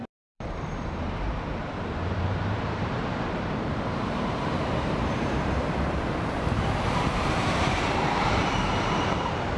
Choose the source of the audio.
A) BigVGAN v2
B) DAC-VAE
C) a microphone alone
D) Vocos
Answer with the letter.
A